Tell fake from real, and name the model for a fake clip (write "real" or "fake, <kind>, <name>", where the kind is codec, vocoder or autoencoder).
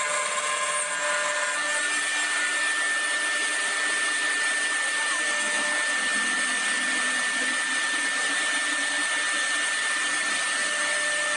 real